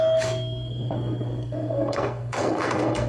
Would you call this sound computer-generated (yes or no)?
yes